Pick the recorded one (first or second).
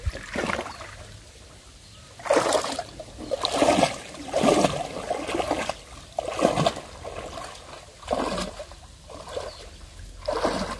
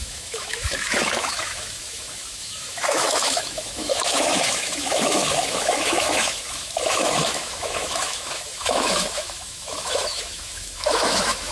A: first